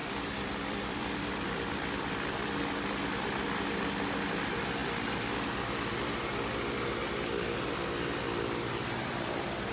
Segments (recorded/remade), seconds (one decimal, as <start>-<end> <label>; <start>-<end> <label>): 0.0-3.9 remade; 3.9-9.0 recorded; 9.0-9.7 remade